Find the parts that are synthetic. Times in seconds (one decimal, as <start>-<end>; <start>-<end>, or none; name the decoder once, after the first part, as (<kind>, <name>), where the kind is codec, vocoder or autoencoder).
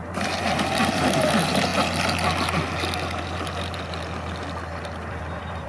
0.0-1.7 (vocoder, BigVGAN v2); 5.1-5.7